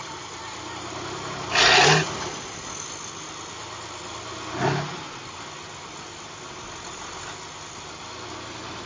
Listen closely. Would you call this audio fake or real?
real